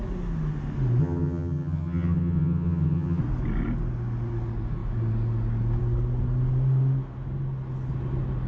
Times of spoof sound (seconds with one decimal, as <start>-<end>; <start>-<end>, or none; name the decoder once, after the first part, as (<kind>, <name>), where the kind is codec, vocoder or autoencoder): 1.0-3.2 (vocoder, HiFi-GAN)